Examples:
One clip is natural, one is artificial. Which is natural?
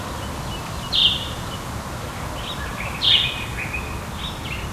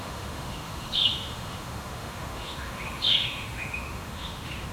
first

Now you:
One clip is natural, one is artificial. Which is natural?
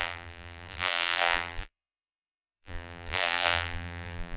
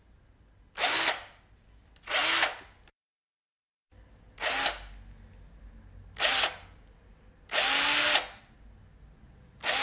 second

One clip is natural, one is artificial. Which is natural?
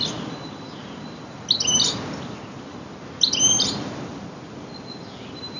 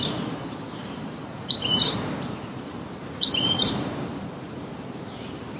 first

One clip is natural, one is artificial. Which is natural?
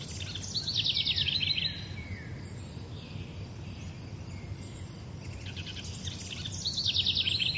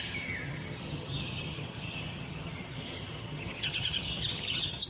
first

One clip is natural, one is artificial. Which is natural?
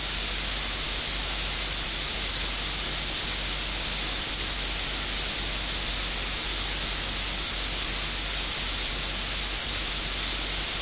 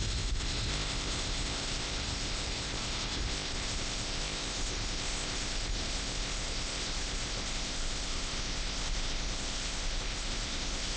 first